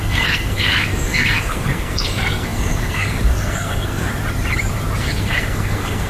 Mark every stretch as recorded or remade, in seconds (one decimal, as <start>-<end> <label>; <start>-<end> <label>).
0.0-4.1 remade; 4.1-5.0 recorded; 5.0-6.1 remade